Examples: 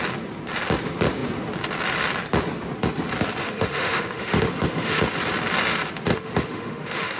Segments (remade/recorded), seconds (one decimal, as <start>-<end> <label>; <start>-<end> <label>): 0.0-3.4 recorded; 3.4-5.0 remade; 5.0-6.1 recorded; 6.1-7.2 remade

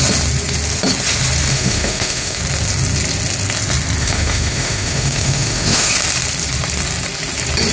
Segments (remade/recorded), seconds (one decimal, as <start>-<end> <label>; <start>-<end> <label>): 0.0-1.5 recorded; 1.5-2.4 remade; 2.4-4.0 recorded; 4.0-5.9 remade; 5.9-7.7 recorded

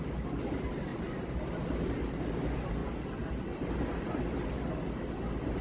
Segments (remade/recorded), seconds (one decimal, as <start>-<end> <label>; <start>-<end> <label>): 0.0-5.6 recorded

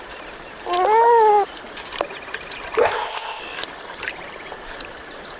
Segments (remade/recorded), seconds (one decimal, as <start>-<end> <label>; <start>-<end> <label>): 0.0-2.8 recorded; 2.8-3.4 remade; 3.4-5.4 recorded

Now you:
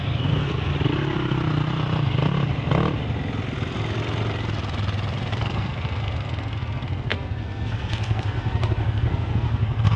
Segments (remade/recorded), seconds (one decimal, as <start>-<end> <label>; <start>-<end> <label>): 0.0-0.7 remade; 0.7-5.3 recorded; 5.3-10.0 remade

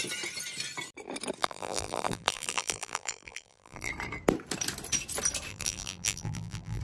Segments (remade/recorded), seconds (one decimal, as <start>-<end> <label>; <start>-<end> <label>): 0.0-1.4 recorded; 1.4-3.9 remade; 3.9-5.5 recorded; 5.5-6.8 remade

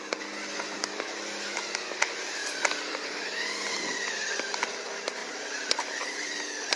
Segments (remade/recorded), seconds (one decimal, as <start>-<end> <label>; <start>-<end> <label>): 0.0-2.4 recorded; 2.4-3.7 remade; 3.7-6.8 recorded